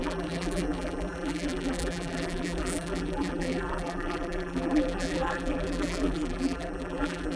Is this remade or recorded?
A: remade